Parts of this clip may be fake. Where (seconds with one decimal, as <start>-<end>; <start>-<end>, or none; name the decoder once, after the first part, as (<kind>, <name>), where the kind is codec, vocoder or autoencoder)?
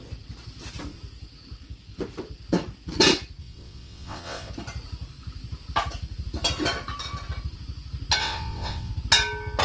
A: 3.4-4.5 (vocoder, WaveNeXt); 8.2-8.9